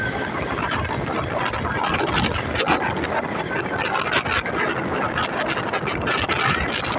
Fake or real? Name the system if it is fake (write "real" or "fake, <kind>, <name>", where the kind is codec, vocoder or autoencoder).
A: real